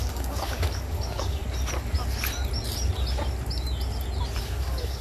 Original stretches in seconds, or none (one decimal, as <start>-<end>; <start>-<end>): 1.4-4.4